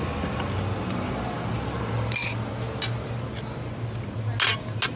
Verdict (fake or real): real